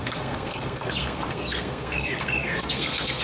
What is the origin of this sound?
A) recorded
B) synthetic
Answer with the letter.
B